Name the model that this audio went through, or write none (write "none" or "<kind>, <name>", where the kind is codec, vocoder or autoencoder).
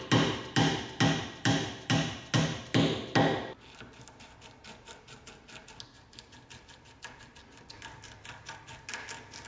none